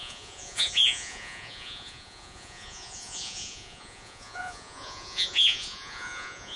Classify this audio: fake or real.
fake